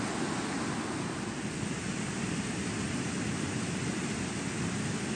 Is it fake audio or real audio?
real